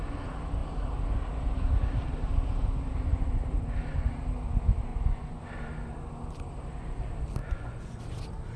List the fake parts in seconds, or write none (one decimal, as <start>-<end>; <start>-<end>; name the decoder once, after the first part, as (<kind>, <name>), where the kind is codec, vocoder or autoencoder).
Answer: 4.9-5.4 (vocoder, Vocos); 7.4-8.0